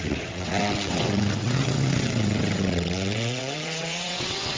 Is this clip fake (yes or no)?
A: yes